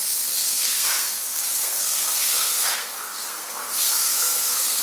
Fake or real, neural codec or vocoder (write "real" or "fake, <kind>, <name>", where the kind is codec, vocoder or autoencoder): fake, codec, SNAC